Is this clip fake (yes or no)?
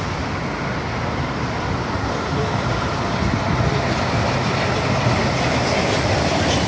no